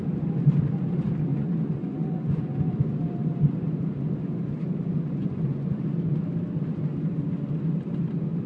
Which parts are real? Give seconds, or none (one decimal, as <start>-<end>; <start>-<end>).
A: 0.0-1.3; 2.7-5.2; 5.8-8.5

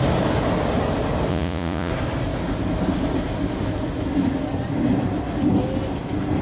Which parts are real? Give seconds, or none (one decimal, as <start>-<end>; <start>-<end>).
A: 0.0-1.3; 1.9-6.4

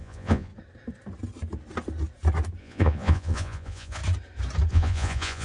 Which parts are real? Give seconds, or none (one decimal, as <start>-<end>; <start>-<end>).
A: 0.5-2.6; 4.0-4.7

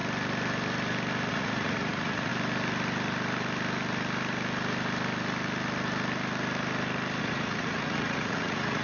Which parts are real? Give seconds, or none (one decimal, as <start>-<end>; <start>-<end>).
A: 0.0-1.3; 2.3-7.2

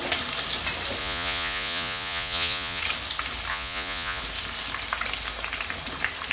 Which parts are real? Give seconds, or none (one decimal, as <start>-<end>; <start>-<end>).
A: 0.0-1.0; 2.8-3.5; 4.2-6.3

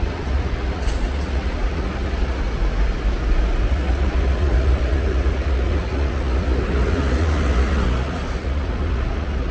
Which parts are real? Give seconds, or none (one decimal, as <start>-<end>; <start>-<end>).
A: 2.4-3.7